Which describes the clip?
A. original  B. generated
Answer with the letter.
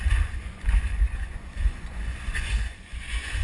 B